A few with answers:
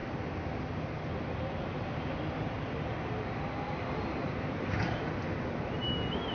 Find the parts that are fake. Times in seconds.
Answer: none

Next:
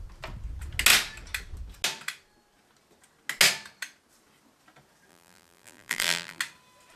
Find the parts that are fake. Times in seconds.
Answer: 5.1-6.4

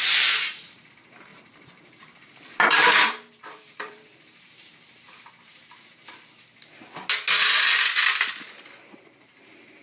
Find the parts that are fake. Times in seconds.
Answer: 0.0-6.0; 8.6-9.8

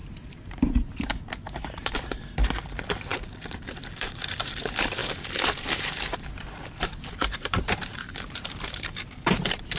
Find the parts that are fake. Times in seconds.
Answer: 0.0-9.8